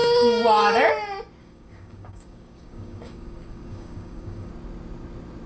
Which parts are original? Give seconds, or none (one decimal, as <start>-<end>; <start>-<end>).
0.9-1.4; 4.5-5.5

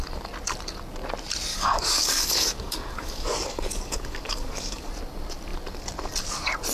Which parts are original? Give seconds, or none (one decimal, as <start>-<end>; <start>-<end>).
0.0-1.5; 4.9-6.7

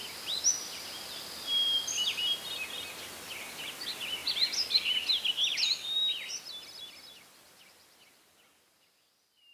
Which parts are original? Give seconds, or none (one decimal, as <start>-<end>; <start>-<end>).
0.0-9.5

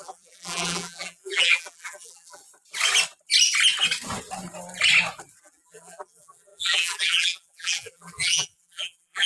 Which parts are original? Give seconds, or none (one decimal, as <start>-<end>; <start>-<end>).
2.4-5.4